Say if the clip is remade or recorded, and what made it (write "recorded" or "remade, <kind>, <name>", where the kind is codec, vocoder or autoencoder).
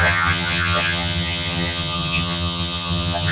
remade, vocoder, HiFi-GAN